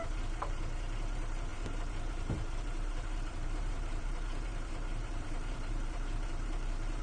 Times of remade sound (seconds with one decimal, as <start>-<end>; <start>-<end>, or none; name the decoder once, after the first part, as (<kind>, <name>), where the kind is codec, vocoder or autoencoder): 0.0-7.0 (vocoder, BigVGAN v2)

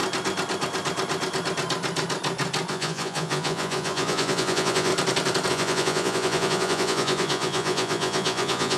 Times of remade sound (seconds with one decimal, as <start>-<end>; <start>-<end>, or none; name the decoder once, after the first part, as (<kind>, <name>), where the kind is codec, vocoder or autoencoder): 2.7-4.9 (vocoder, Vocos); 5.5-8.8

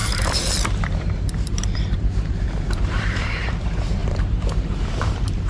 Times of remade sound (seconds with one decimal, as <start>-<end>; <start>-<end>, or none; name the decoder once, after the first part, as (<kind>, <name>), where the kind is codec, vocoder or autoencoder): 0.0-5.5 (vocoder, BigVGAN v2)

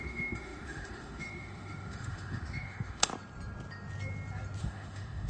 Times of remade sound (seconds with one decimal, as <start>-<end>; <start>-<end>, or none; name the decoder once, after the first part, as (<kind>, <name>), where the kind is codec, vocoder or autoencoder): 0.0-3.1 (autoencoder, DAC-VAE); 4.6-5.3

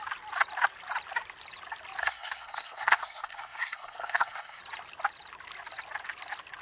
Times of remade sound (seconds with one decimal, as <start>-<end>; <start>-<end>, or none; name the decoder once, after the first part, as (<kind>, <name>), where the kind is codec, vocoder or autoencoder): 2.0-4.6 (codec, SNAC)

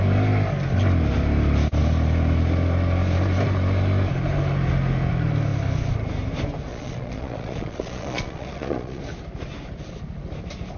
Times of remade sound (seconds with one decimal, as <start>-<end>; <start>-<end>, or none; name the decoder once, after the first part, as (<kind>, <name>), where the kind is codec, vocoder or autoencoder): 6.7-9.0 (vocoder, Vocos)

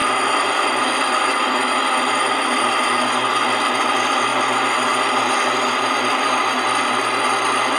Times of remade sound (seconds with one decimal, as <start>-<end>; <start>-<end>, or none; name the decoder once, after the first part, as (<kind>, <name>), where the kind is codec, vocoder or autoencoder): none

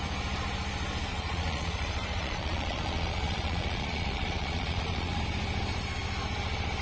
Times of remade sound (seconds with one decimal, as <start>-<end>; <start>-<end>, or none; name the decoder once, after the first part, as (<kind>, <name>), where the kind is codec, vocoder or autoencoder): 1.1-5.2 (vocoder, Vocos)